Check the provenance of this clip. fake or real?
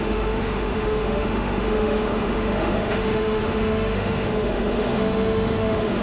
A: fake